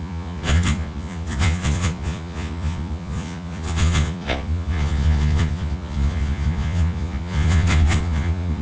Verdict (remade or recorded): remade